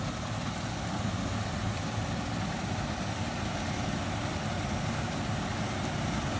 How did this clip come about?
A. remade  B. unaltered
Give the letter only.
B